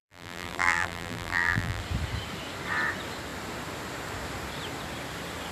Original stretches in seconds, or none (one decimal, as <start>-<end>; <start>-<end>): 1.8-5.5